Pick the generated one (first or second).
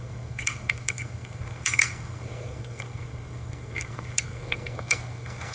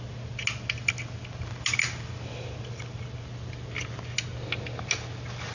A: first